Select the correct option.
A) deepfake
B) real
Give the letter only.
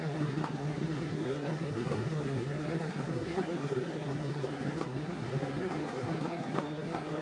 A